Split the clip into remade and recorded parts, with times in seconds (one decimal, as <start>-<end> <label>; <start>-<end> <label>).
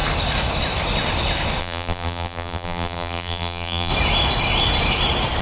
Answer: 0.0-1.6 recorded; 1.6-3.9 remade; 3.9-5.4 recorded